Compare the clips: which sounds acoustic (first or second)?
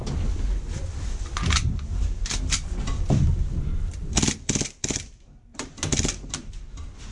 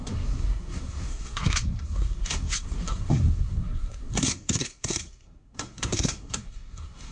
first